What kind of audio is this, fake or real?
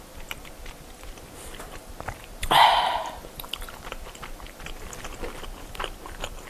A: real